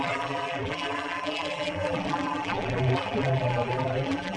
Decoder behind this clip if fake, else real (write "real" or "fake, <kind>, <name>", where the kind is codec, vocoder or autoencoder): fake, vocoder, BigVGAN v2